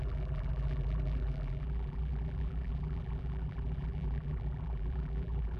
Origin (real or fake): fake